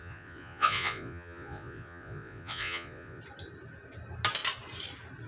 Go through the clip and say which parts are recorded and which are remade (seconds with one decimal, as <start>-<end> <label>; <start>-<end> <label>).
0.0-3.2 remade; 3.2-5.3 recorded